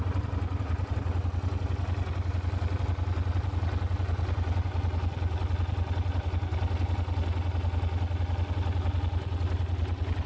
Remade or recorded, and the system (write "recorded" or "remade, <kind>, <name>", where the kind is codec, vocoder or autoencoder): recorded